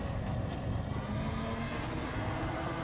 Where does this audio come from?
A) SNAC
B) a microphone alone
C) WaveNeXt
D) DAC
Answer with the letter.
B